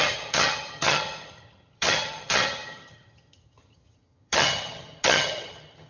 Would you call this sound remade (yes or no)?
yes